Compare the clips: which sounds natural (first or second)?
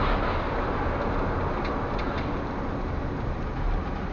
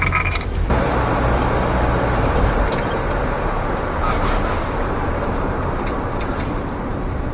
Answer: first